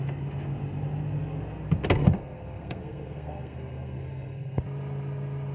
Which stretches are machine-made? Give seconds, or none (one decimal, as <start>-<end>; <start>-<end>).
2.0-4.6